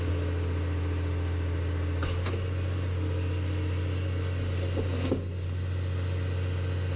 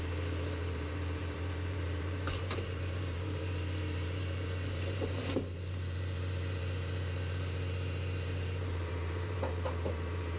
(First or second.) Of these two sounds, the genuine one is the first